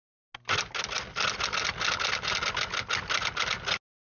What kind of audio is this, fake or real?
real